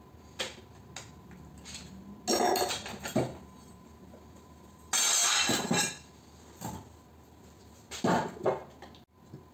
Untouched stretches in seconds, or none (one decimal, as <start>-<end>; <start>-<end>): 0.0-9.5